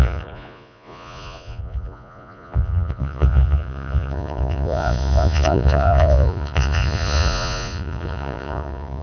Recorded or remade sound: remade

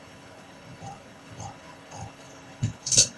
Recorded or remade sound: remade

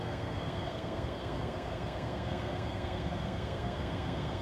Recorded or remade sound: remade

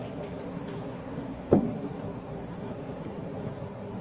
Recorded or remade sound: remade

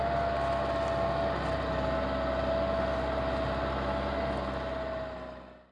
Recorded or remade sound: recorded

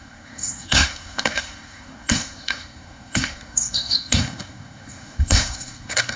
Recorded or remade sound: remade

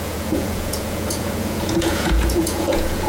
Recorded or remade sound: remade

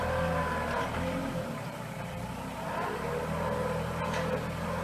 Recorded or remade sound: recorded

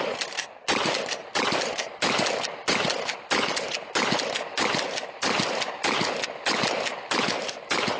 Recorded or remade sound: recorded